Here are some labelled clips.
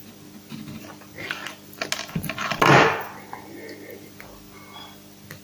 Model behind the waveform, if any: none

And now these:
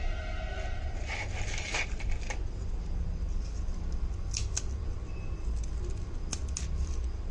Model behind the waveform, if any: none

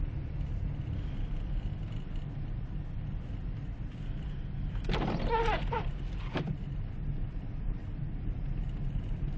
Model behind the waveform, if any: none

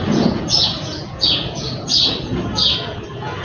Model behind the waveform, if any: vocoder, Vocos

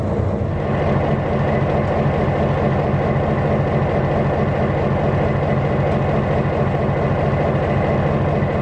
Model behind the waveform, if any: none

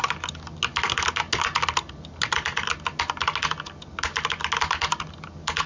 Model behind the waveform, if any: none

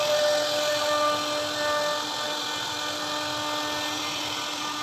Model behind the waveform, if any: none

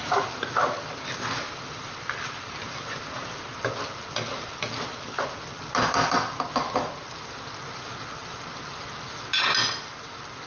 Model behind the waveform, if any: none